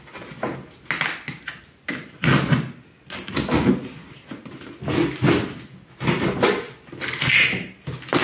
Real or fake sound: real